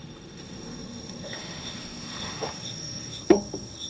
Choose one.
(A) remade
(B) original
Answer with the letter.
A